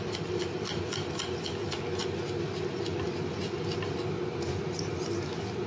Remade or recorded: recorded